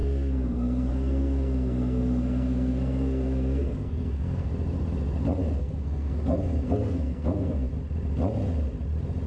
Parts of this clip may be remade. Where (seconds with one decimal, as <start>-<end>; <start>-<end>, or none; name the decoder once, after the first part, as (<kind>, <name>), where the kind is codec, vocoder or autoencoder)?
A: 0.0-4.5 (codec, SNAC); 5.6-7.7